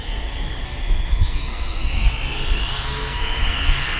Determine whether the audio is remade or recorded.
remade